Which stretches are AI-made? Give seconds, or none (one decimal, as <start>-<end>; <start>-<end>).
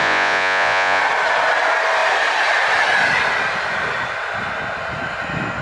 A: 0.0-1.0